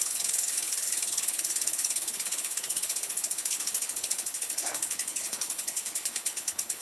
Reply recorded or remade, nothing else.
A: remade